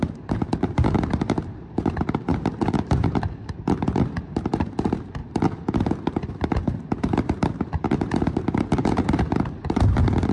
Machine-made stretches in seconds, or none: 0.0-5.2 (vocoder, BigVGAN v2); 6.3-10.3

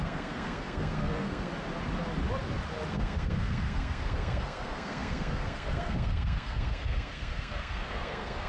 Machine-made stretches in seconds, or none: 0.0-1.5 (codec, SNAC); 2.9-8.5

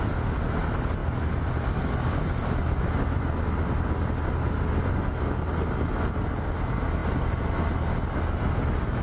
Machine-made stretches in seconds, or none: none